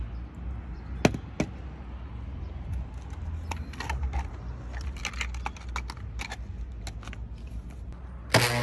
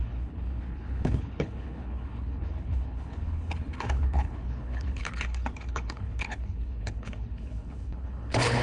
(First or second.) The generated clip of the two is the second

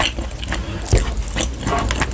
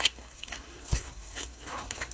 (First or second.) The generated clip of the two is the second